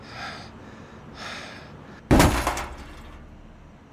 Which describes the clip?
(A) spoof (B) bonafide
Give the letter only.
B